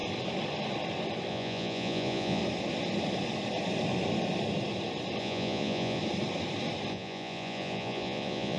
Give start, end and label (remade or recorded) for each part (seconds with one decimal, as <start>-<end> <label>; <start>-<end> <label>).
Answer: 0.0-1.3 recorded; 1.3-2.4 remade; 2.4-5.2 recorded; 5.2-6.0 remade; 6.0-6.9 recorded; 6.9-8.6 remade